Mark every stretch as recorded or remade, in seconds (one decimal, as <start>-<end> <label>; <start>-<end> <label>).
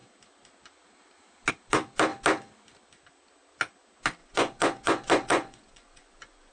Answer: 0.0-4.2 recorded; 4.2-6.5 remade